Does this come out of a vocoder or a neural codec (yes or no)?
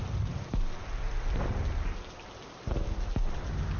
no